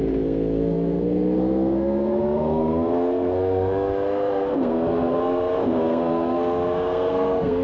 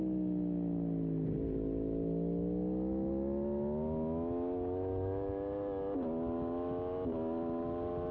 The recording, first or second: second